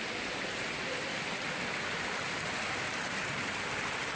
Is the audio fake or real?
real